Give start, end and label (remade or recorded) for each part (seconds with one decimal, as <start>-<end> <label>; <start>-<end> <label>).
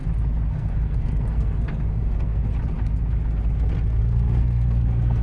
0.0-0.5 recorded; 0.5-2.4 remade; 2.4-4.0 recorded; 4.0-5.2 remade